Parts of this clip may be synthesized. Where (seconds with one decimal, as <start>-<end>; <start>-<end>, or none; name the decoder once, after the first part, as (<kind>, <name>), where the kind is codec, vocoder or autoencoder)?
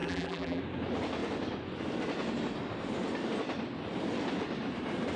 0.0-0.6 (vocoder, BigVGAN v2)